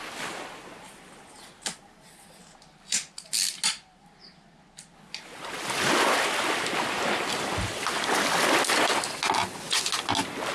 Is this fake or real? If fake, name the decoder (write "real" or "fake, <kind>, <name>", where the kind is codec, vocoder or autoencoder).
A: real